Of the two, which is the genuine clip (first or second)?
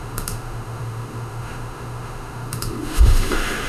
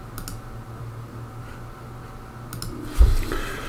second